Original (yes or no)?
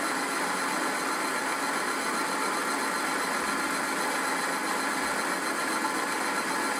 yes